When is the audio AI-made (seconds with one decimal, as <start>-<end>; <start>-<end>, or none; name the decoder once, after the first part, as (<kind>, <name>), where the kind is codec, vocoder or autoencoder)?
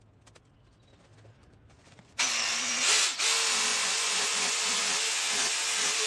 1.4-2.2 (vocoder, Vocos); 3.7-4.6